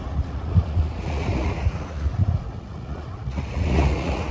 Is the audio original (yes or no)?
no